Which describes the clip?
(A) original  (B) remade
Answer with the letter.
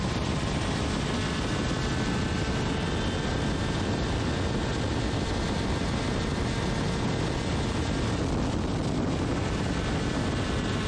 A